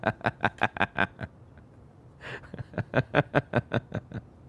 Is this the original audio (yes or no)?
yes